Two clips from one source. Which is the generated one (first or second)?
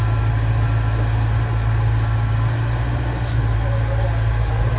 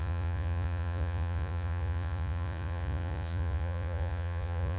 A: second